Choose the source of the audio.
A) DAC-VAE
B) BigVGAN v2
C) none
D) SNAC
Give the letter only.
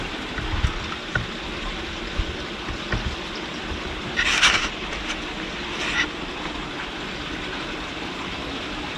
C